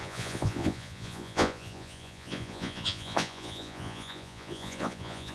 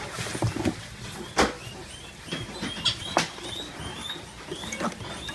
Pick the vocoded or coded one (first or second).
first